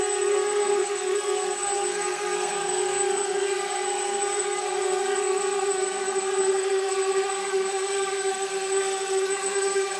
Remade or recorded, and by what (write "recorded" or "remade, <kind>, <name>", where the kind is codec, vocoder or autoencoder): remade, codec, SNAC